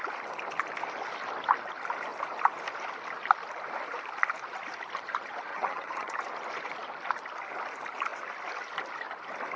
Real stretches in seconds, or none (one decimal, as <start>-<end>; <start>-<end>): 0.0-5.5; 6.2-9.6